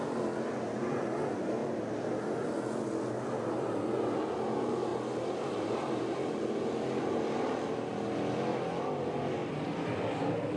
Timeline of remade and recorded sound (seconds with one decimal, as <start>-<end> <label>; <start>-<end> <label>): 0.0-4.9 recorded; 4.9-6.0 remade; 6.0-8.5 recorded; 8.5-9.0 remade; 9.0-9.4 recorded; 9.4-10.6 remade